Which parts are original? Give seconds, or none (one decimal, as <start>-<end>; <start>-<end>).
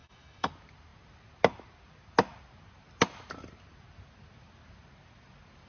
0.5-5.7